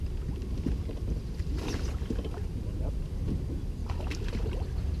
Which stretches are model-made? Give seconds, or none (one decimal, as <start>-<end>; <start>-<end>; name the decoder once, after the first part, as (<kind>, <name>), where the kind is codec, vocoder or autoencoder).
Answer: none

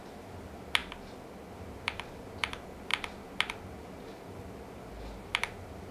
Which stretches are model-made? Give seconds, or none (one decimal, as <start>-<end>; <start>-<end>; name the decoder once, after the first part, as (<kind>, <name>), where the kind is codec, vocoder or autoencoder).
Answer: none